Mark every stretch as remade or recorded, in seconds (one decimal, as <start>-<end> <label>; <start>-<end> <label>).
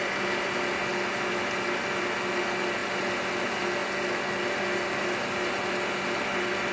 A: 0.0-2.8 recorded; 2.8-3.4 remade; 3.4-6.7 recorded